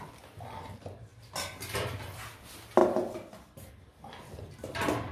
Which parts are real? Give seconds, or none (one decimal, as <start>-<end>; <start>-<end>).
0.0-5.1